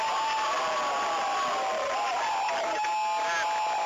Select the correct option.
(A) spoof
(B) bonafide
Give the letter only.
B